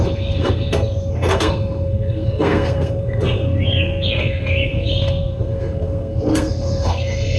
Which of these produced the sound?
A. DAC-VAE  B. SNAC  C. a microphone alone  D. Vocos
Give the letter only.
B